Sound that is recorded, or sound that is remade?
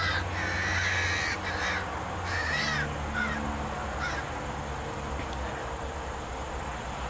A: recorded